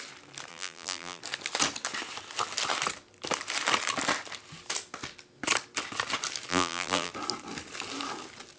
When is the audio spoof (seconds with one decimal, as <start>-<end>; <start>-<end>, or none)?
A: 0.5-1.2; 6.5-7.1